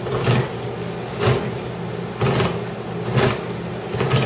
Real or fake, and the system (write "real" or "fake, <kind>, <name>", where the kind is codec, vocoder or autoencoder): real